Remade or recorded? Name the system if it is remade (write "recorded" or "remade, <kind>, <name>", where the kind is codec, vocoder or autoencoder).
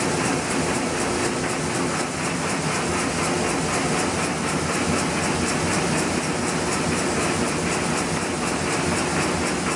recorded